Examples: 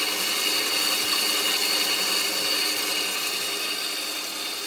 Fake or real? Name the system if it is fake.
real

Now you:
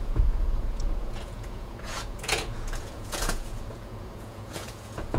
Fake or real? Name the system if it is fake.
fake, vocoder, Vocos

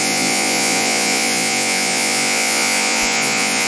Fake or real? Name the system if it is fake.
fake, vocoder, Vocos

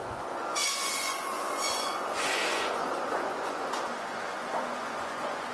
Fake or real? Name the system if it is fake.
fake, vocoder, Vocos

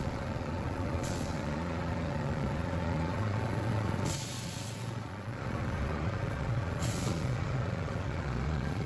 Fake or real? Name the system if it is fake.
fake, vocoder, Vocos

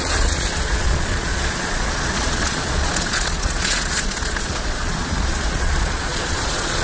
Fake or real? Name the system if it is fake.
fake, vocoder, Vocos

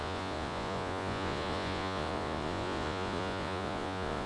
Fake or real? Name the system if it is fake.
fake, vocoder, Vocos